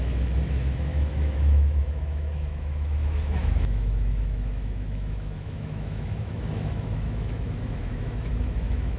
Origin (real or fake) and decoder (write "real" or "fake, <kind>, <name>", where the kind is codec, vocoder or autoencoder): fake, autoencoder, DAC-VAE